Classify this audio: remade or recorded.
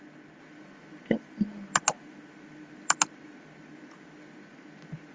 recorded